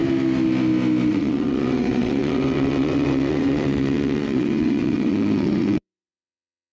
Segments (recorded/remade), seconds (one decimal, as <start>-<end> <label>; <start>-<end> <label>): 0.0-1.1 recorded; 1.1-6.7 remade